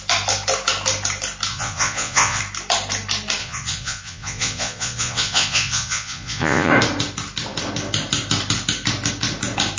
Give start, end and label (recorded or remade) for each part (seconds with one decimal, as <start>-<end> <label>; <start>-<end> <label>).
0.0-1.5 recorded; 1.5-2.4 remade; 2.4-3.4 recorded; 3.4-6.7 remade; 6.7-9.8 recorded